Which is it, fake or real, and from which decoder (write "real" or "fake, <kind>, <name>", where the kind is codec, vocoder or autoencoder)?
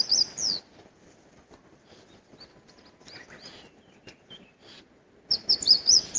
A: real